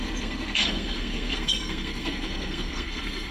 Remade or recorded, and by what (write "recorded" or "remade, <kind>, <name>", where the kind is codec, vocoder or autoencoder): remade, codec, SNAC